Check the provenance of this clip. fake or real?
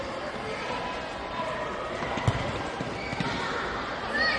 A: fake